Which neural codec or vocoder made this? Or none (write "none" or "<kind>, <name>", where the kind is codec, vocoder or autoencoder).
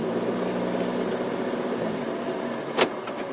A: none